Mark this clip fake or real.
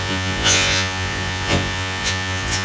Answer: fake